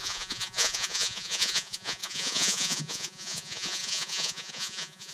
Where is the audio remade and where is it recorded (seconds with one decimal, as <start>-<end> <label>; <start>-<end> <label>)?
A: 0.0-5.1 remade

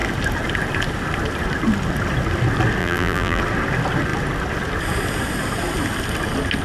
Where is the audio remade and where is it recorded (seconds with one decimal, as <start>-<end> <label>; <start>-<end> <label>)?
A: 0.0-2.8 recorded; 2.8-3.4 remade; 3.4-6.6 recorded

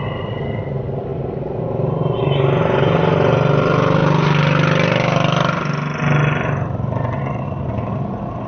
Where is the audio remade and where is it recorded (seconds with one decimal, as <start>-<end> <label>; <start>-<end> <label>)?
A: 0.0-8.5 recorded

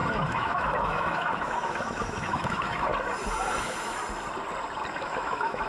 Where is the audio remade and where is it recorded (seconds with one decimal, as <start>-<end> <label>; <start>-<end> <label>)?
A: 0.0-2.9 remade; 2.9-3.6 recorded; 3.6-4.0 remade; 4.0-5.0 recorded; 5.0-5.7 remade